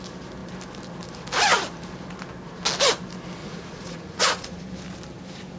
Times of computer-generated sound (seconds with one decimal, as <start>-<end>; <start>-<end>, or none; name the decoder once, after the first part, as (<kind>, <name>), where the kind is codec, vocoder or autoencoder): 3.4-4.6 (vocoder, Vocos)